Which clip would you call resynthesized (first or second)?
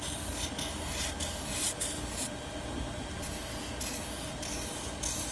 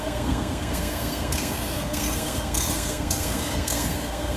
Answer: second